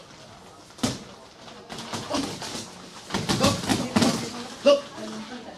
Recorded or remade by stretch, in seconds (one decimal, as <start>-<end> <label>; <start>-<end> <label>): 0.0-3.7 recorded; 3.7-4.7 remade; 4.7-5.6 recorded